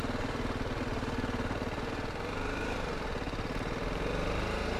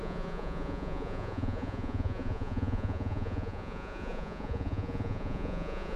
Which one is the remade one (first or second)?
second